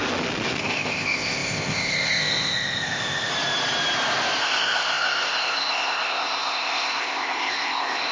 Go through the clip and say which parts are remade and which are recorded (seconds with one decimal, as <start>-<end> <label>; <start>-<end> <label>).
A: 0.0-0.6 recorded; 0.6-3.3 remade; 3.3-4.4 recorded; 4.4-8.1 remade